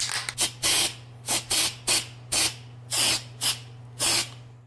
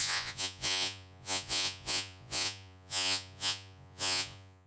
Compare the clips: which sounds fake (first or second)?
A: second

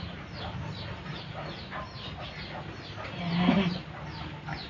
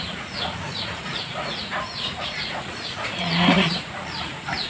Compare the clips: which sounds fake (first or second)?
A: second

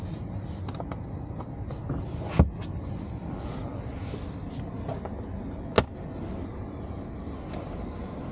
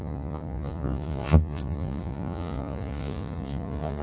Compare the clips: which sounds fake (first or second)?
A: second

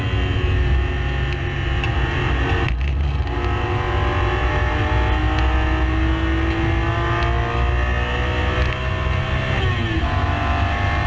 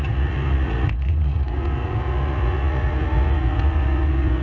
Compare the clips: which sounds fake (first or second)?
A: second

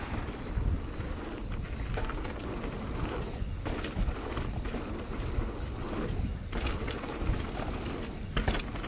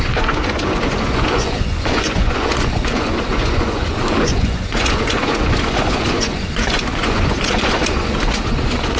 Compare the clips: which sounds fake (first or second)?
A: second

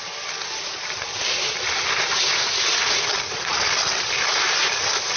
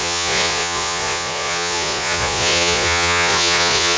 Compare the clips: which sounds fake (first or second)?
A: second